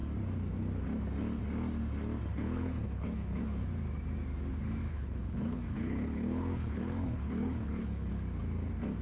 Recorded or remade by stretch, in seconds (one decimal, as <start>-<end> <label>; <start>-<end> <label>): 0.0-2.3 recorded; 2.3-3.4 remade; 3.4-4.8 recorded; 4.8-8.1 remade; 8.1-9.0 recorded